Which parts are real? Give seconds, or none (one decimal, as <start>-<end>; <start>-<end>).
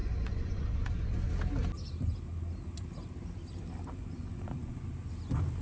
1.3-4.0; 4.9-5.6